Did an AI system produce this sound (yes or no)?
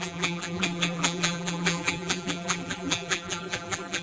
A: yes